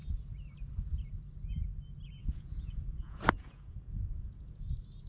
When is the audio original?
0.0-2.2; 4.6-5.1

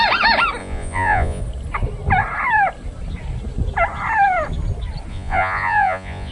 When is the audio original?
0.0-0.6; 1.4-5.1